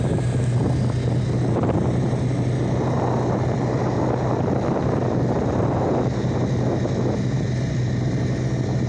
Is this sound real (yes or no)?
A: yes